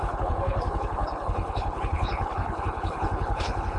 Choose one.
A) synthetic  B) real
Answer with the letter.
A